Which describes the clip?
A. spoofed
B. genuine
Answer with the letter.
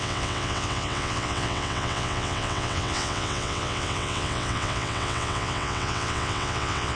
A